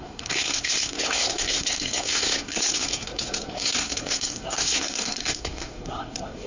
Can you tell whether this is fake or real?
fake